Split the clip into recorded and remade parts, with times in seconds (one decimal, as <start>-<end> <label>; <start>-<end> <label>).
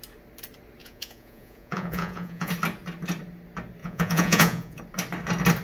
0.0-0.8 recorded; 0.8-2.5 remade; 2.5-3.8 recorded; 3.8-4.8 remade; 4.8-5.6 recorded